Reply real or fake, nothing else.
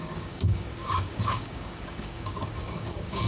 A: fake